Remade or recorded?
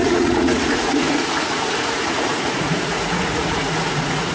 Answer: remade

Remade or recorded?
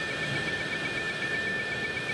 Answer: recorded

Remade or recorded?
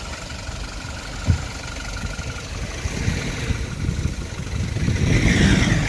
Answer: recorded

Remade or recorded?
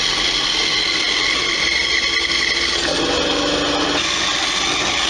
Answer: recorded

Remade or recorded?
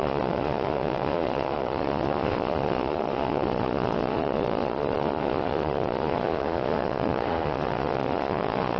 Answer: remade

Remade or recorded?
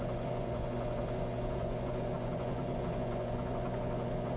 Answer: remade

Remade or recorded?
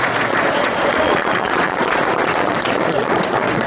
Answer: remade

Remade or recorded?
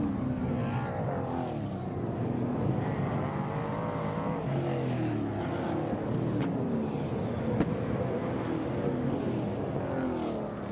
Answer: recorded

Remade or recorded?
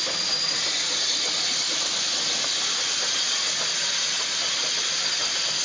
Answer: recorded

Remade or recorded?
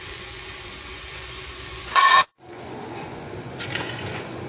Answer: remade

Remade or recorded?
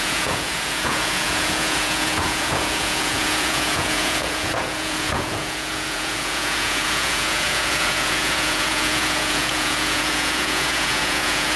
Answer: remade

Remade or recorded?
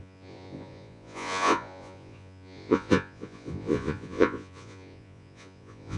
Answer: remade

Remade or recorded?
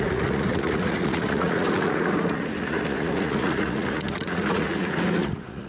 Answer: remade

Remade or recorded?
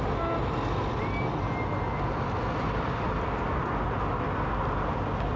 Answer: recorded